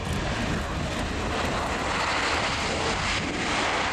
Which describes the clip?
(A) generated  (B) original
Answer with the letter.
B